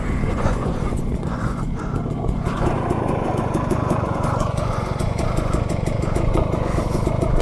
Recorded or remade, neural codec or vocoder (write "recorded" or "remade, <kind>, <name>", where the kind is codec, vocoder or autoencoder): remade, vocoder, Vocos